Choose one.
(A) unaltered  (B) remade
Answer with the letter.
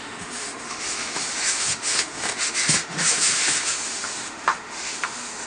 B